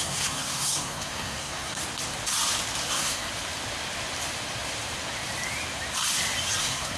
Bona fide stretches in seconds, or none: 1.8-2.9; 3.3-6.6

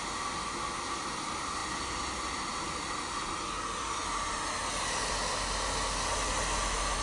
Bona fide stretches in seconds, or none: 0.0-7.0